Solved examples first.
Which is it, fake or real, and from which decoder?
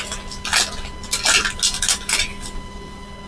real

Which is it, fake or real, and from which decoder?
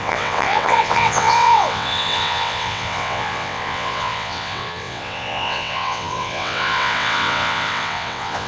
fake, vocoder, WaveNeXt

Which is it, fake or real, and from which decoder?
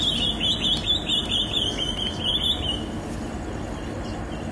real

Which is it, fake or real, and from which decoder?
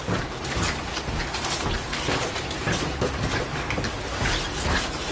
real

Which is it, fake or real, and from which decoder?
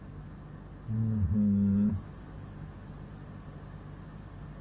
real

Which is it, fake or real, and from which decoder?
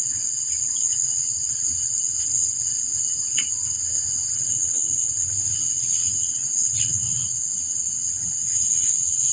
fake, vocoder, WaveNeXt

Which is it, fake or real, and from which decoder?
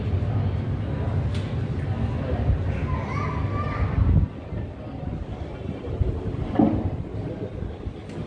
real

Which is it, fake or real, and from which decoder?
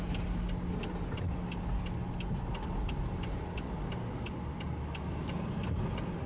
real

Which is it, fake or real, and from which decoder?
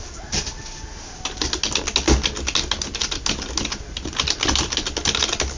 real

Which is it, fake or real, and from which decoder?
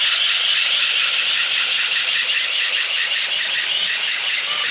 real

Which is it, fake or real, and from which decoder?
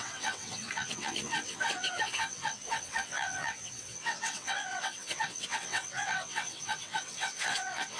fake, vocoder, WaveNeXt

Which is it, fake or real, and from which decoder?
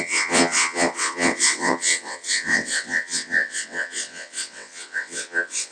fake, vocoder, WaveNeXt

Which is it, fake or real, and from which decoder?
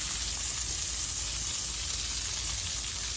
real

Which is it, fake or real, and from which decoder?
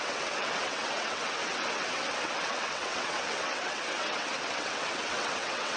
fake, vocoder, WaveNeXt